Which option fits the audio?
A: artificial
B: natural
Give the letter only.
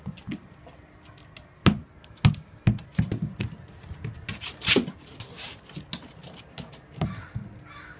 B